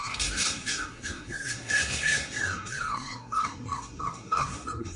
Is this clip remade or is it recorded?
remade